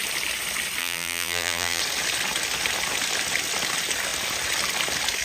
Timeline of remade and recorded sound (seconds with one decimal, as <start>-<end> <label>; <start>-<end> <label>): 0.0-0.8 recorded; 0.8-1.8 remade; 1.8-5.2 recorded

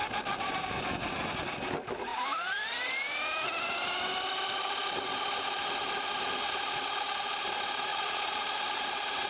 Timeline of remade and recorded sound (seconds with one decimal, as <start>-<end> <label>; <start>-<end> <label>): 0.0-7.9 recorded; 7.9-8.4 remade; 8.4-9.3 recorded